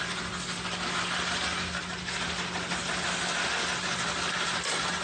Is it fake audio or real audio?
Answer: real